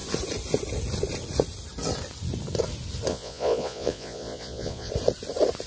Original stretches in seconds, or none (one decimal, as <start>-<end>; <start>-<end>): 0.0-3.1; 4.9-5.7